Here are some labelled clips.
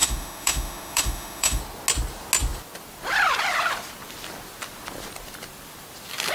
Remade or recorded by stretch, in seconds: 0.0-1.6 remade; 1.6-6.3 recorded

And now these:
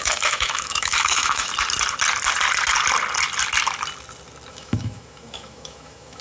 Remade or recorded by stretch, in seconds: 0.0-1.5 remade; 1.5-4.5 recorded; 4.5-6.2 remade

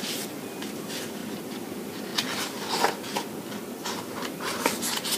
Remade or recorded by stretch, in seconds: 0.0-5.2 recorded